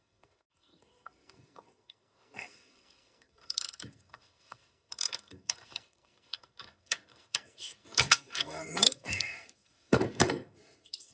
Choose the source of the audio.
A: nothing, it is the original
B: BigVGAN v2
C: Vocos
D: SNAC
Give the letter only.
D